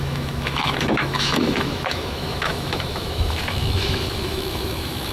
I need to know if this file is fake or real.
fake